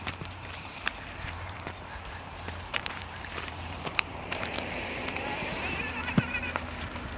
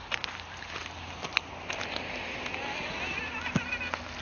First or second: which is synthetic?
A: first